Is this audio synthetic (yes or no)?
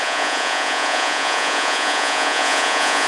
yes